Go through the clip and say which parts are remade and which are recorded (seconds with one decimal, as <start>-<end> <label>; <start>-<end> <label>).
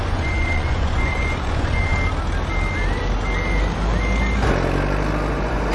0.0-1.9 remade; 1.9-5.3 recorded; 5.3-5.7 remade